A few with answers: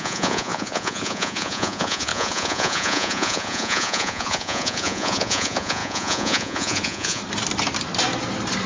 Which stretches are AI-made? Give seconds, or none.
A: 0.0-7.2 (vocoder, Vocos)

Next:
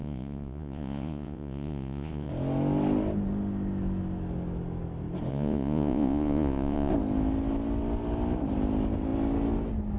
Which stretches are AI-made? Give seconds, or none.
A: 0.0-2.3 (vocoder, Vocos); 5.3-6.9